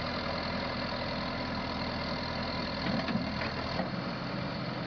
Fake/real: real